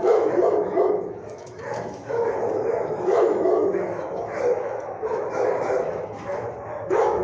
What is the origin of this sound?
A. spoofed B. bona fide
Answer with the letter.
A